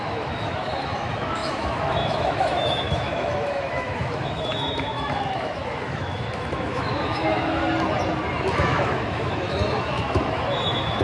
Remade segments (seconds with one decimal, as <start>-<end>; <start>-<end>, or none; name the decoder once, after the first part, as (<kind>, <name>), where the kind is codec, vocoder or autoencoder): 0.0-7.6 (autoencoder, DAC-VAE); 8.5-11.0